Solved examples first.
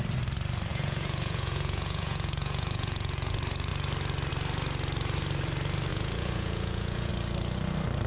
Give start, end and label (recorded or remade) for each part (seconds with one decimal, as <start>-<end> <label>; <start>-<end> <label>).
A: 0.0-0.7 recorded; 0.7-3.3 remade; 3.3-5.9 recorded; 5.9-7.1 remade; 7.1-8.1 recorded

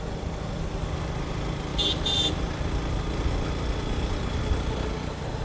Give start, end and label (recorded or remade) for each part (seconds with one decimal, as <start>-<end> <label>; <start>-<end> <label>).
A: 0.0-5.4 recorded

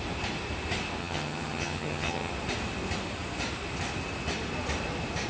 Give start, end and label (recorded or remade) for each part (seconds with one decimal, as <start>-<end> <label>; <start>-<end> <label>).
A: 0.0-1.0 recorded; 1.0-2.3 remade; 2.3-5.3 recorded

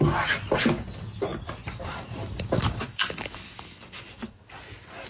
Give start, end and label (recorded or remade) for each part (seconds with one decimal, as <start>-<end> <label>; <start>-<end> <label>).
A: 0.0-1.3 recorded; 1.3-4.4 remade; 4.4-5.1 recorded

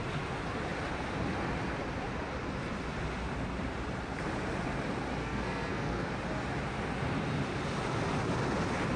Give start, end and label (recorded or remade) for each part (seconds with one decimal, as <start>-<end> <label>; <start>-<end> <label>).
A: 0.0-5.2 recorded; 5.2-6.1 remade; 6.1-9.0 recorded

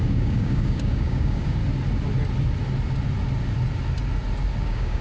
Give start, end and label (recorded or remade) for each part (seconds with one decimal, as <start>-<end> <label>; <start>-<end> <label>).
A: 0.0-1.6 remade; 1.6-4.6 recorded; 4.6-5.0 remade